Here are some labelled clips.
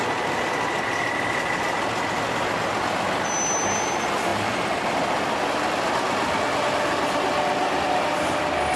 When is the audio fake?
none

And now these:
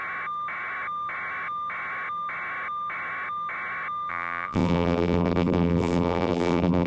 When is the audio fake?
4.1-6.9 (vocoder, BigVGAN v2)

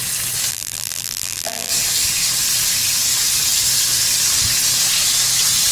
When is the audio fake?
0.5-1.7 (vocoder, BigVGAN v2)

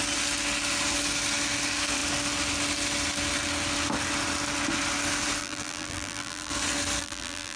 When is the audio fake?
5.4-6.5 (vocoder, BigVGAN v2); 7.0-7.6

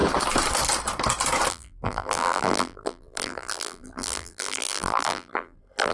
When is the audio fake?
1.5-5.9 (vocoder, BigVGAN v2)

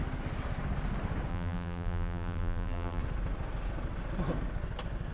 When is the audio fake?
1.3-3.0 (vocoder, BigVGAN v2)